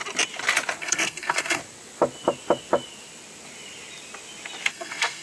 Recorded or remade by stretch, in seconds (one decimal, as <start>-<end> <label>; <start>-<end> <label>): 0.0-0.8 recorded; 0.8-1.6 remade; 1.6-4.7 recorded; 4.7-5.2 remade